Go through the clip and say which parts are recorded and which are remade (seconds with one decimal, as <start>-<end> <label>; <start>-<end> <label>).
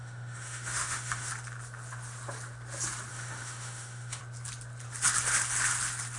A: 0.0-1.3 remade; 1.3-3.1 recorded; 3.1-4.2 remade; 4.2-6.2 recorded